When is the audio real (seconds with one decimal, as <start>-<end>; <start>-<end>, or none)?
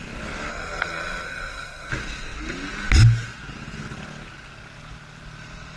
0.0-0.5; 1.9-5.8